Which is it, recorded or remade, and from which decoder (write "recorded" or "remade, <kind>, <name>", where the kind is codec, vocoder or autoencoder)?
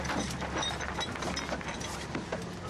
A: recorded